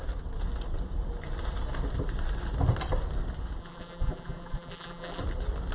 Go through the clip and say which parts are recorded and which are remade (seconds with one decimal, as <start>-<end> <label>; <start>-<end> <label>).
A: 0.0-3.6 recorded; 3.6-5.2 remade; 5.2-5.7 recorded